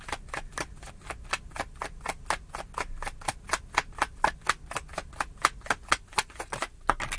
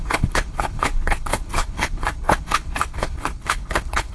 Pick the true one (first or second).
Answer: first